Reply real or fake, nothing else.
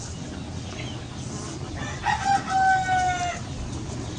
real